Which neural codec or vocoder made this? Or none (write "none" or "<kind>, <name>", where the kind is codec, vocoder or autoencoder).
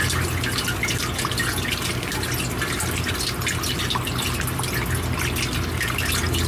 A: none